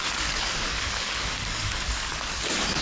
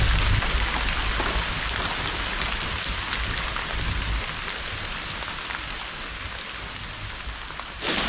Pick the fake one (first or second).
first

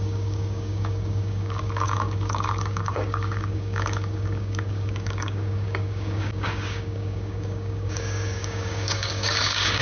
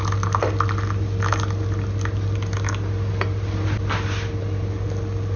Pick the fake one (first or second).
first